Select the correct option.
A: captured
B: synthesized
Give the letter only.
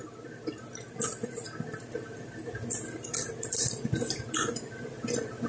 A